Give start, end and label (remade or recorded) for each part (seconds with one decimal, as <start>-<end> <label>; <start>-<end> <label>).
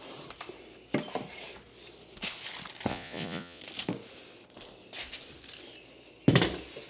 0.0-2.9 recorded; 2.9-3.6 remade; 3.6-6.9 recorded